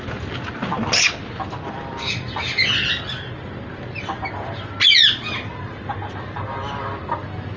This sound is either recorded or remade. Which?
recorded